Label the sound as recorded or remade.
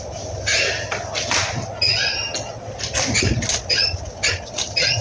recorded